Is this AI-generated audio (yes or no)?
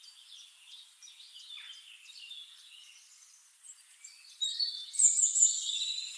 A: no